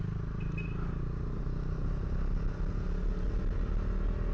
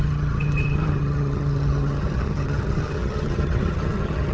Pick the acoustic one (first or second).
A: first